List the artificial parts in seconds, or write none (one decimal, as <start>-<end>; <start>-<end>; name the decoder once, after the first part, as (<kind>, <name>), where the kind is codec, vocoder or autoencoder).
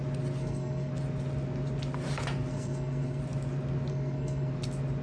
0.4-0.9 (codec, SNAC); 2.5-3.2; 3.9-4.5